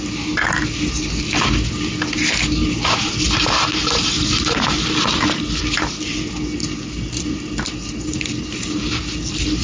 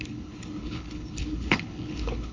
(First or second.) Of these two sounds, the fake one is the second